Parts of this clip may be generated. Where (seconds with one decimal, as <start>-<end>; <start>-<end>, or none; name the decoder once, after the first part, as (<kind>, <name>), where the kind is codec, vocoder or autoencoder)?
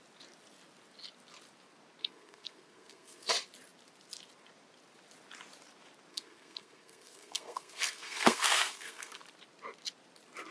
2.0-3.3 (codec, SNAC); 6.1-9.2